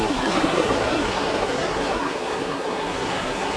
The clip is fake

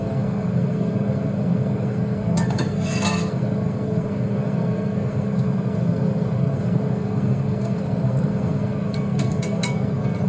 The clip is fake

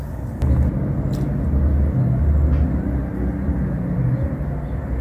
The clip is real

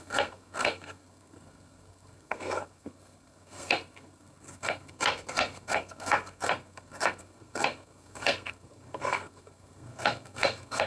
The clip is fake